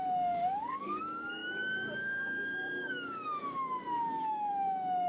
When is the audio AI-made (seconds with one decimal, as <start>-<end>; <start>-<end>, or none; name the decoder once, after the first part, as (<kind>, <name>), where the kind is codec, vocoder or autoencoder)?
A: 0.0-5.1 (codec, DAC)